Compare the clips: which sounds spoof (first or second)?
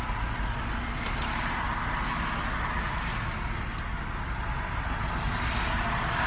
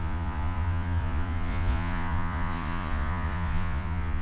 second